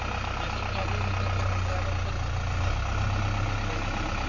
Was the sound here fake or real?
real